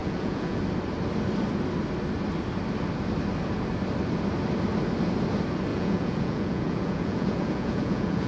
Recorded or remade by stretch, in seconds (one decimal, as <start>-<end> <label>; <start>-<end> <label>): 0.0-0.6 remade; 0.6-5.7 recorded; 5.7-8.3 remade